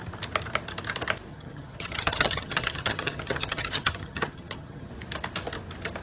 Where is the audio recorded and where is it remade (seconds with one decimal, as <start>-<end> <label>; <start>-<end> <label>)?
0.0-1.3 recorded; 1.3-4.9 remade; 4.9-6.0 recorded